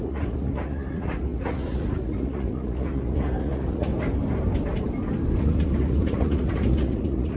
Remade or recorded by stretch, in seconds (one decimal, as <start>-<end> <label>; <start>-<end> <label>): 0.0-3.9 remade; 3.9-5.4 recorded; 5.4-7.4 remade

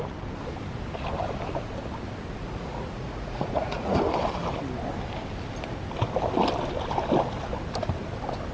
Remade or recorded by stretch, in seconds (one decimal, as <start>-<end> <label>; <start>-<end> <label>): 0.0-2.4 recorded; 2.4-4.0 remade; 4.0-8.5 recorded

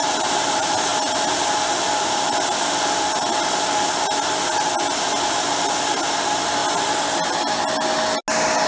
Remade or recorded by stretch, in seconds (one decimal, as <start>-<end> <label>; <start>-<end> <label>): 0.0-8.7 recorded

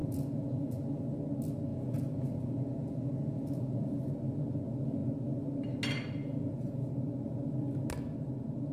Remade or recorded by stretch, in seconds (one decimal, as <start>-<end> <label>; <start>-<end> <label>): 0.0-1.0 remade; 1.0-1.7 recorded; 1.7-4.0 remade; 4.0-6.2 recorded; 6.2-6.9 remade; 6.9-8.7 recorded

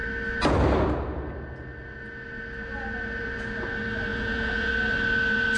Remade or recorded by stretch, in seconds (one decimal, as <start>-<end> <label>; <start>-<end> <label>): 0.0-4.1 recorded; 4.1-4.7 remade; 4.7-5.6 recorded

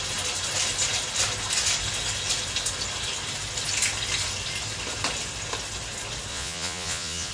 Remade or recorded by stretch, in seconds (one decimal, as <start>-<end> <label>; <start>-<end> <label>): 0.0-6.3 recorded; 6.3-7.3 remade

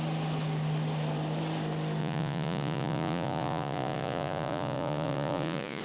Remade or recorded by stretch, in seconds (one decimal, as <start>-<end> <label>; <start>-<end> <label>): 0.0-2.0 recorded; 2.0-5.8 remade

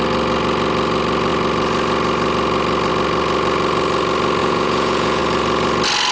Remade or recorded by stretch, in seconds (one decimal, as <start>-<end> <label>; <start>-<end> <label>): 0.0-4.4 recorded; 4.4-5.2 remade; 5.2-6.1 recorded